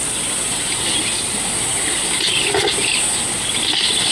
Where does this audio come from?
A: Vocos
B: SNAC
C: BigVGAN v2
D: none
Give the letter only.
D